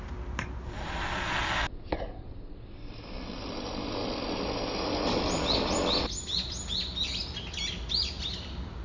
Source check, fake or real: real